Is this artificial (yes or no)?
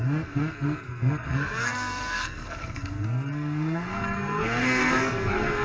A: yes